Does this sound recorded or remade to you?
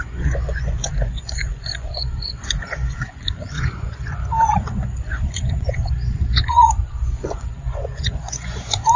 remade